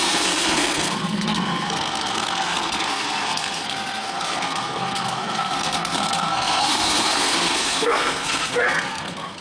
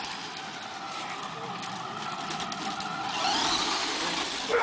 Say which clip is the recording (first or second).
second